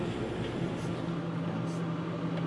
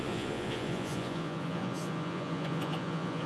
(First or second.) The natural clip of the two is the first